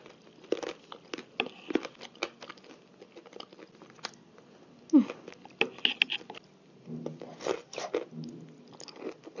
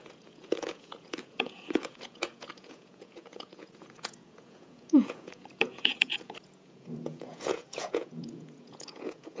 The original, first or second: first